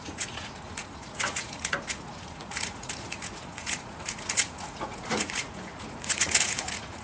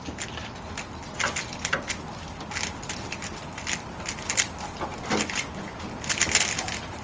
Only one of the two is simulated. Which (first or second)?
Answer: first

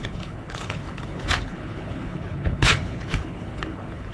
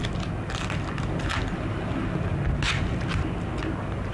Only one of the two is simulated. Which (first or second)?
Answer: first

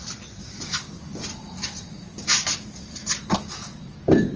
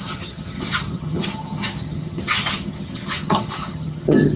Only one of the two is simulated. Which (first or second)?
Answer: second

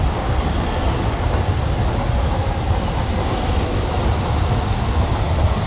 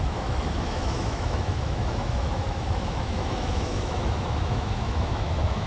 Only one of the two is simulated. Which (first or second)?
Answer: second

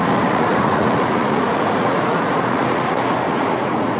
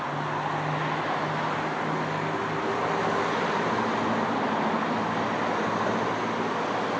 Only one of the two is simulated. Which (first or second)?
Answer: first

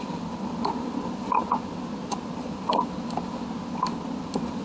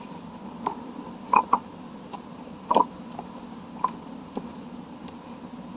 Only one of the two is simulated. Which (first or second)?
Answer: second